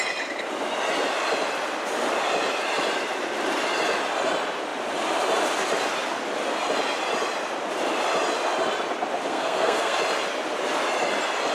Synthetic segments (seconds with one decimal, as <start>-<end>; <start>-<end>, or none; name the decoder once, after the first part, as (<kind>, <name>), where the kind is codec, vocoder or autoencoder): 9.3-10.0 (codec, SNAC)